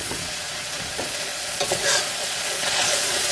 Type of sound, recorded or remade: remade